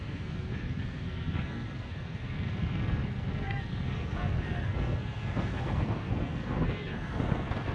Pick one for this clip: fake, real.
fake